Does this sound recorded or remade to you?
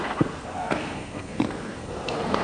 remade